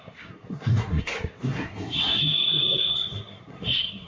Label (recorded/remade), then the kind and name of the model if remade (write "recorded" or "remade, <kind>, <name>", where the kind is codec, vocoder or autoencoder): remade, codec, SNAC